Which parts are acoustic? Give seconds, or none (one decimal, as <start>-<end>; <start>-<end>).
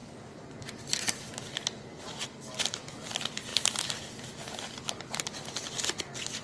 1.3-3.5; 5.1-6.4